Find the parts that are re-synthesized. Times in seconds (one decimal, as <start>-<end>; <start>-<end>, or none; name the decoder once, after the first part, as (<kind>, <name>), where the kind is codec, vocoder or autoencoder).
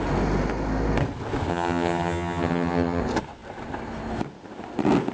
1.5-3.0 (vocoder, HiFi-GAN)